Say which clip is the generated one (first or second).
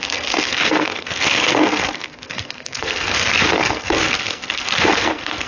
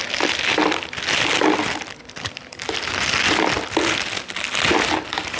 first